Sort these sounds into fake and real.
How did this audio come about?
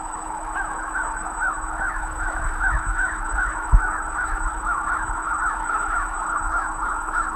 fake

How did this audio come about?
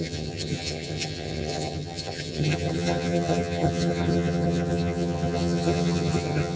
fake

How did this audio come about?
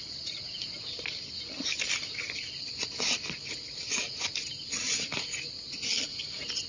real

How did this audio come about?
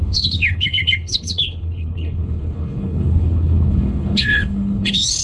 fake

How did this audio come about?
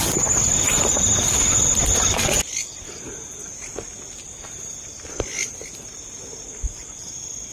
real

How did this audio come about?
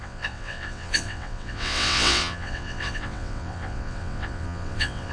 fake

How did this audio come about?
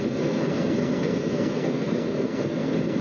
fake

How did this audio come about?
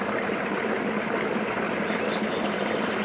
real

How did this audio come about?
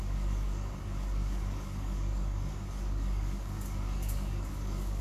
fake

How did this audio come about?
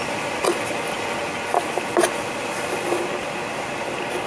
real